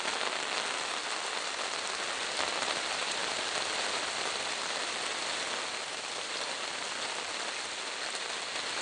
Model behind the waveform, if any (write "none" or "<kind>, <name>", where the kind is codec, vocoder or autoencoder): none